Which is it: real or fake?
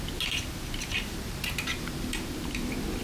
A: real